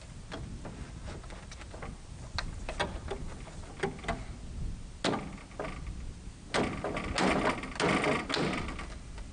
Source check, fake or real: real